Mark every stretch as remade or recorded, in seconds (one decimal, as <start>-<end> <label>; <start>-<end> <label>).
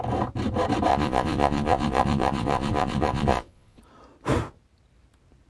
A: 0.0-0.9 recorded; 0.9-3.8 remade; 3.8-5.5 recorded